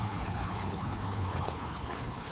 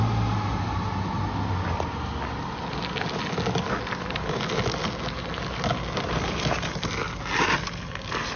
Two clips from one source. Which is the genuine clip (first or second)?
second